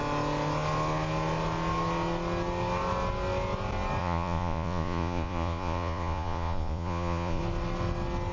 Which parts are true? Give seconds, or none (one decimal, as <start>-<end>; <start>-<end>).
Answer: 0.0-4.0; 7.4-8.3